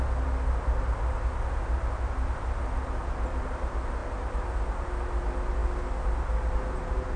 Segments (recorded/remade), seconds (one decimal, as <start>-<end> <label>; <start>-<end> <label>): 0.0-7.2 recorded